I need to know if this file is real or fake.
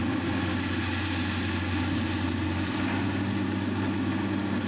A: real